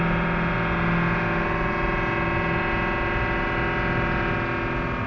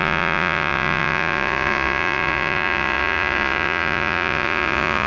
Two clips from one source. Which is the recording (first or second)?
first